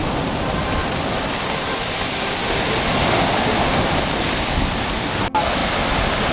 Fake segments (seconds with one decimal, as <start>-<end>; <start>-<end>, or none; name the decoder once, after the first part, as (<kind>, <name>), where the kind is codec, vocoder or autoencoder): none